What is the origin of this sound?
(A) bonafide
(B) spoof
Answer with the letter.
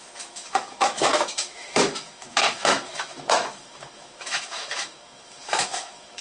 B